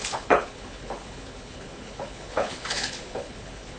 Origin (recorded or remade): remade